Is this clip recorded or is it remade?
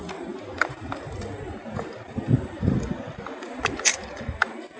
remade